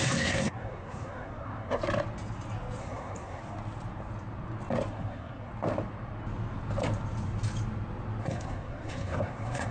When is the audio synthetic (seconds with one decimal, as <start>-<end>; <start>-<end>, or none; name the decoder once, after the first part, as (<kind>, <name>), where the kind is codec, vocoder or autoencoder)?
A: 0.0-1.8 (codec, SNAC); 2.8-3.4; 4.9-5.5; 8.2-9.7